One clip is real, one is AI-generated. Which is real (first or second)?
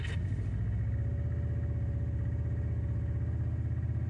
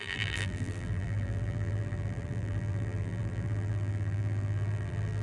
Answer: first